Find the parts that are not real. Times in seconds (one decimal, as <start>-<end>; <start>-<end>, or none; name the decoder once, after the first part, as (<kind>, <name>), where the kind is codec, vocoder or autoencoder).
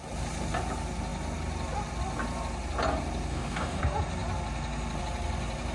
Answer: 3.3-3.8 (codec, DAC)